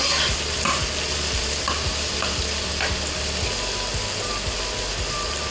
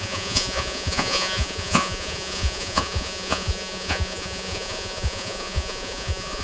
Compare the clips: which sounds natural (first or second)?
first